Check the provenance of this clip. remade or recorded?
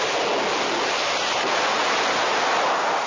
recorded